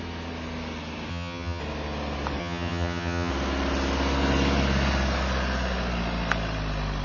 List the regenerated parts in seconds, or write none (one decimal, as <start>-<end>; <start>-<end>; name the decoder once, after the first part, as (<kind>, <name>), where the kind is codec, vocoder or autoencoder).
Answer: 1.1-1.6 (vocoder, HiFi-GAN); 2.4-3.3

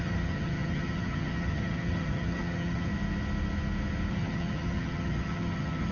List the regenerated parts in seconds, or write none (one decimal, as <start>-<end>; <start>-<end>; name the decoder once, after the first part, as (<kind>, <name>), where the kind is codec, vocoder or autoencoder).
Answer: 0.0-2.9 (vocoder, HiFi-GAN); 4.1-5.9

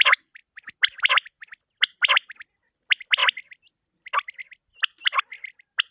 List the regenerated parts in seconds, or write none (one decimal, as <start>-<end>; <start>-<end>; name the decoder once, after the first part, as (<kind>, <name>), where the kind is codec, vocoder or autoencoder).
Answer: none

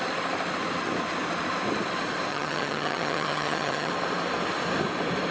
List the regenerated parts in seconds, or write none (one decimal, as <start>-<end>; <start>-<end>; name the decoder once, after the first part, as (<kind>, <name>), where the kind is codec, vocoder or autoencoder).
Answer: 2.3-3.9 (vocoder, HiFi-GAN)

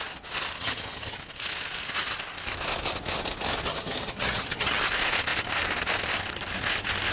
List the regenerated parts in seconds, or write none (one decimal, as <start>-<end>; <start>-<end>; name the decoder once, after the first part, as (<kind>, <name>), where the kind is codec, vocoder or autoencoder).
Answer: 0.6-1.2 (vocoder, HiFi-GAN); 3.7-4.8

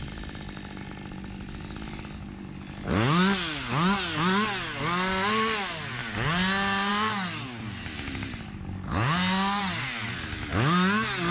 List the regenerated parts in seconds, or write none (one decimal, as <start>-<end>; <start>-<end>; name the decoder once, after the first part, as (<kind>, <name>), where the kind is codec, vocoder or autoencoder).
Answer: none

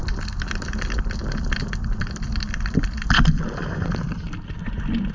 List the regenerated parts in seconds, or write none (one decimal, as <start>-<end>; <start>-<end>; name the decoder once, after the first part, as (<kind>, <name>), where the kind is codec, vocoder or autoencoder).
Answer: none